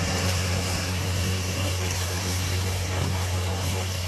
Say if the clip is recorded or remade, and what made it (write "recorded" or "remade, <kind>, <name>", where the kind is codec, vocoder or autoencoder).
remade, codec, SNAC